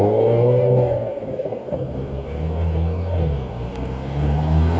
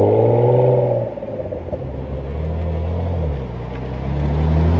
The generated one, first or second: first